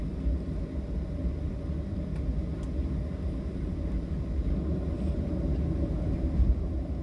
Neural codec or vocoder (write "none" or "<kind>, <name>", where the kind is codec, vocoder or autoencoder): none